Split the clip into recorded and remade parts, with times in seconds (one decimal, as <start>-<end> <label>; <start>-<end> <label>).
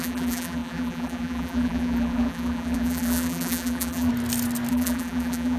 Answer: 0.0-4.1 remade; 4.1-4.7 recorded; 4.7-5.6 remade